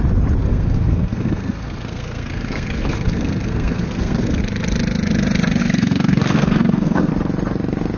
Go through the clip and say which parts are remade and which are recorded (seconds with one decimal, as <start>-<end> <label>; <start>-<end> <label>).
0.0-0.4 recorded; 0.4-4.4 remade; 4.4-5.6 recorded; 5.6-7.1 remade; 7.1-8.0 recorded